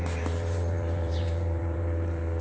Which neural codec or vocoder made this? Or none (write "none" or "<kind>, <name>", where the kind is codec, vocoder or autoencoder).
vocoder, BigVGAN v2